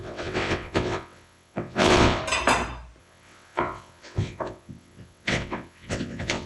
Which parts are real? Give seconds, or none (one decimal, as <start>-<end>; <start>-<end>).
2.2-3.0